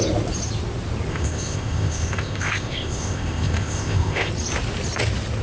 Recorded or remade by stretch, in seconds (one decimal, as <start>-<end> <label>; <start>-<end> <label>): 0.0-1.1 recorded; 1.1-4.3 remade; 4.3-5.4 recorded